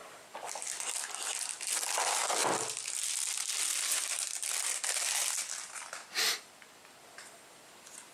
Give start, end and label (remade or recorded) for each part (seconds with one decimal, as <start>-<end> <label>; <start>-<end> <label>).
0.0-8.1 recorded